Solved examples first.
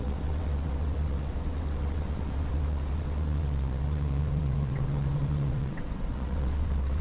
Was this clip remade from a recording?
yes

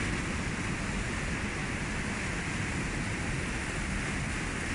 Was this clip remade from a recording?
no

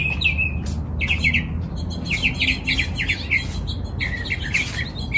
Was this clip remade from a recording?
no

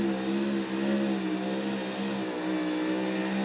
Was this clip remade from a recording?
no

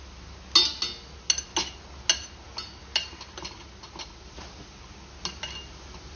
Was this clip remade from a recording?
no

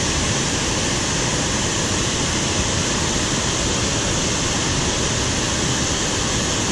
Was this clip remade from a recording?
no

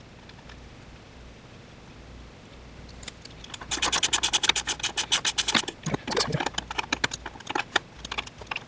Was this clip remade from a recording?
no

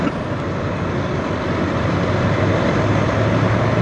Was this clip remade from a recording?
no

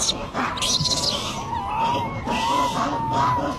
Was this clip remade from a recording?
no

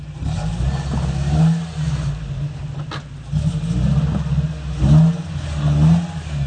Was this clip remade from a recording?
no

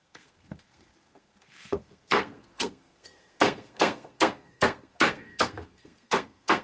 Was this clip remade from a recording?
yes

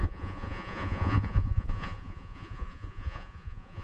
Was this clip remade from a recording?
yes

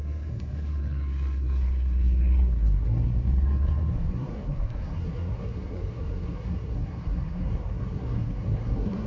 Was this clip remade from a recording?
yes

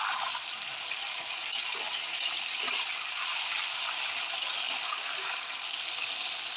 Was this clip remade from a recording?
no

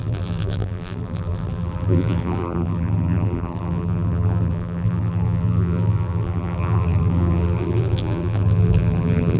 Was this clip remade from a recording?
yes